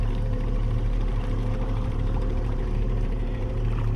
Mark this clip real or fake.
fake